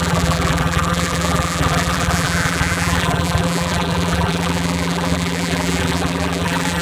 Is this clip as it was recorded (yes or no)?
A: no